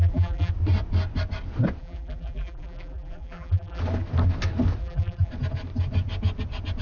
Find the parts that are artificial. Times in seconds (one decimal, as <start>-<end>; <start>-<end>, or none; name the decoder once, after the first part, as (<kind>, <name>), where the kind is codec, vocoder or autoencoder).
0.0-0.5 (vocoder, BigVGAN v2); 1.8-3.8; 4.8-5.3